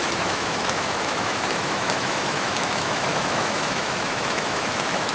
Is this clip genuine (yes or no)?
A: no